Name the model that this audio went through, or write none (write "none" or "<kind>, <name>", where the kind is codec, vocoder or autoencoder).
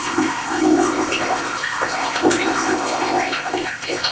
codec, ZipCodec